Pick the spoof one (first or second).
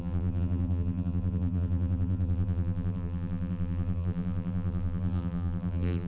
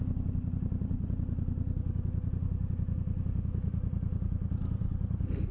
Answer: first